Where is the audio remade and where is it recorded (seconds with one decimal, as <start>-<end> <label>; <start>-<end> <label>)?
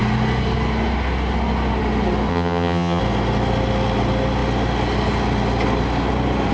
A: 0.0-2.3 recorded; 2.3-3.0 remade; 3.0-6.5 recorded